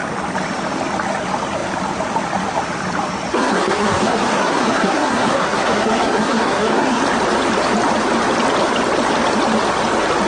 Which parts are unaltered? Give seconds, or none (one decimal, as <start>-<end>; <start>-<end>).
0.0-3.3; 7.0-10.3